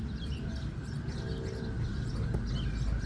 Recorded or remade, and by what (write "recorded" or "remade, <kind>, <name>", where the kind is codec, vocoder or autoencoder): recorded